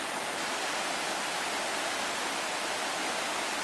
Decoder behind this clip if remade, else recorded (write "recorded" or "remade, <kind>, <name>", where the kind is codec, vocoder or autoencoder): recorded